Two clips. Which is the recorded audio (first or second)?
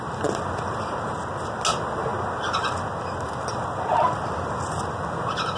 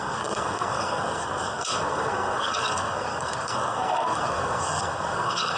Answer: first